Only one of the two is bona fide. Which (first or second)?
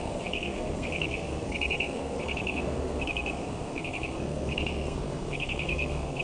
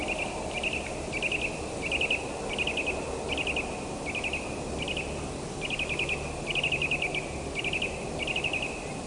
second